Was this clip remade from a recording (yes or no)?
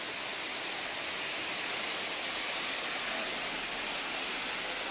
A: no